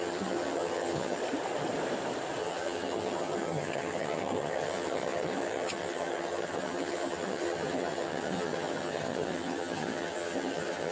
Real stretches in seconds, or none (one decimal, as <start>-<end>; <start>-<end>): 1.2-2.4